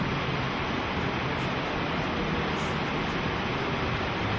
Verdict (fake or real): real